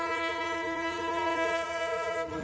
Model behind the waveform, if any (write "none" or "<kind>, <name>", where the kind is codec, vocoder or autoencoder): vocoder, Vocos